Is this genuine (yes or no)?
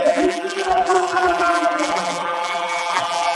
no